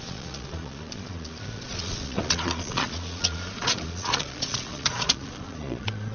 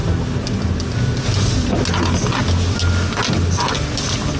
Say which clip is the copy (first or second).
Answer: first